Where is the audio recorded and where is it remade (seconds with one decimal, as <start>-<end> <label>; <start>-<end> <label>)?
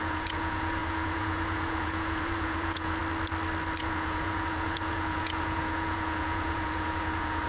0.0-3.0 remade; 3.0-3.8 recorded; 3.8-7.5 remade